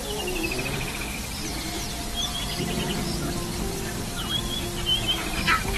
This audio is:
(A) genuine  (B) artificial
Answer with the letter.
A